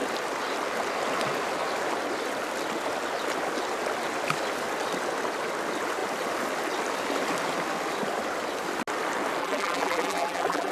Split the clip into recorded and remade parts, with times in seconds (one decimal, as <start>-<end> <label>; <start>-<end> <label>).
0.0-9.4 recorded; 9.4-10.7 remade